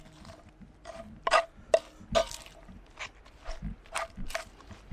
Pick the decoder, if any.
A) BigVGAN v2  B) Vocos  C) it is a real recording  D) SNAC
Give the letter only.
C